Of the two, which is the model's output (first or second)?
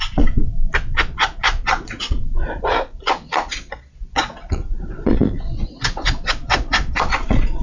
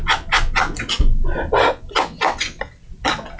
first